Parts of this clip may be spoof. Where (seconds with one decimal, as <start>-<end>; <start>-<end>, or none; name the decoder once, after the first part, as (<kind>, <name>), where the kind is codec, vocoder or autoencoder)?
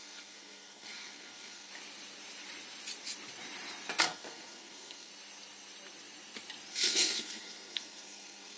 0.0-1.7 (codec, SNAC); 4.0-5.1; 6.7-8.6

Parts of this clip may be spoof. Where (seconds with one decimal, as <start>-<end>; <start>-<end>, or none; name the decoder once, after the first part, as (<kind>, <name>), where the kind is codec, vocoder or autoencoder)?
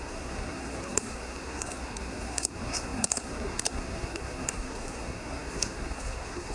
0.0-6.5 (codec, SNAC)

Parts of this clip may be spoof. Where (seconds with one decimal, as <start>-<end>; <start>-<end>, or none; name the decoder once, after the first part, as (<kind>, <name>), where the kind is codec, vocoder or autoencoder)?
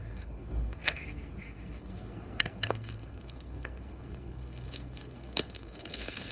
0.0-6.3 (codec, SNAC)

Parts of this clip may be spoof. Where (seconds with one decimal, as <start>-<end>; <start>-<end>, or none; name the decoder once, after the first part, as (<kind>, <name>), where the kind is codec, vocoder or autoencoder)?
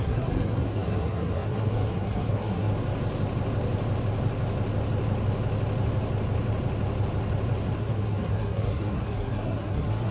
0.0-2.7 (codec, SNAC); 7.8-10.1